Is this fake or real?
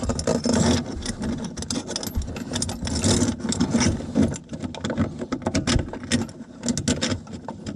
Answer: real